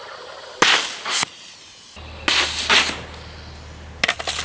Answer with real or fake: real